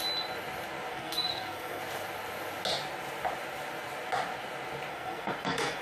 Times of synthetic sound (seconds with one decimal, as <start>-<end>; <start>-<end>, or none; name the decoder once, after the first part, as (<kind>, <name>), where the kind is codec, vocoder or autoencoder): 0.9-1.8 (codec, SNAC); 4.9-5.8